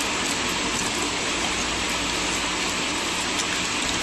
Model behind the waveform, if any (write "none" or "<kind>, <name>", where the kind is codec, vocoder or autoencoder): none